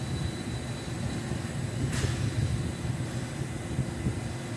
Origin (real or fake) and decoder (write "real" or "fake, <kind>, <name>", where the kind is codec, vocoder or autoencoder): real